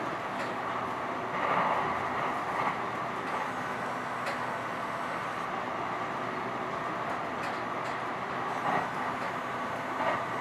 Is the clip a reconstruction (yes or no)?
no